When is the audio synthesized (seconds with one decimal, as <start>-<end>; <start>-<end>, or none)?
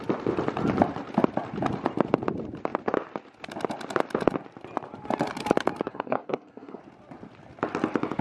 5.9-6.8